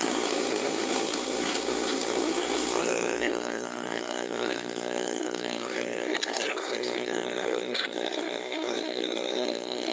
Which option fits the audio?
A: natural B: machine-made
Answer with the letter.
B